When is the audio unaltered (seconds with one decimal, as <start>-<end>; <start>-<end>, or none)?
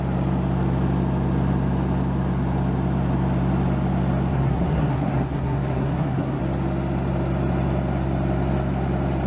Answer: 0.0-4.3; 6.4-9.3